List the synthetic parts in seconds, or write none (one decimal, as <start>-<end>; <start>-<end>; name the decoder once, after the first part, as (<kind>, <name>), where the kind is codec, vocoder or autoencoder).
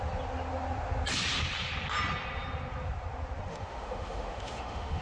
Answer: 3.5-5.0 (autoencoder, DAC-VAE)